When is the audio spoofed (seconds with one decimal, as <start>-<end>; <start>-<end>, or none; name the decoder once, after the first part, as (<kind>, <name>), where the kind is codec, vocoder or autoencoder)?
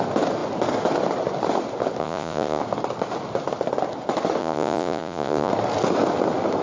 2.0-2.6 (vocoder, Vocos); 4.4-5.5